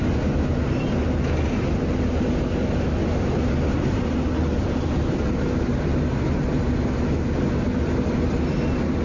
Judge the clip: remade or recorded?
recorded